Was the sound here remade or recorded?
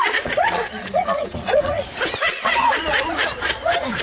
remade